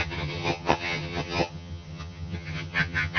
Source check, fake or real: fake